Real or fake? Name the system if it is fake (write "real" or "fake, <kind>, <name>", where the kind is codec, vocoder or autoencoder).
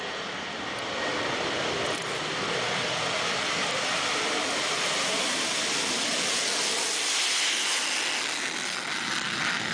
real